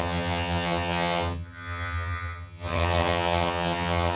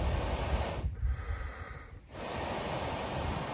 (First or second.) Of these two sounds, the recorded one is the second